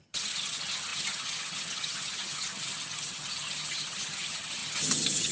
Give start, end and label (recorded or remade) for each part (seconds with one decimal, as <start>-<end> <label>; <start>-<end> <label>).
0.0-5.3 remade